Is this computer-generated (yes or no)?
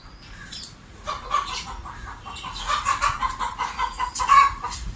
yes